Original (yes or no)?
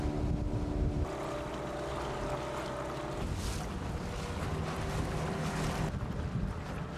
yes